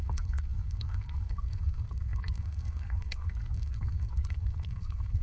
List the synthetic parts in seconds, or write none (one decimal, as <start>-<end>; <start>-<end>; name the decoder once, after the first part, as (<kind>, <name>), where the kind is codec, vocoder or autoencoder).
0.0-5.2 (codec, SNAC)